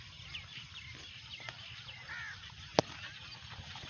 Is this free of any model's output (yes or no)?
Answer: yes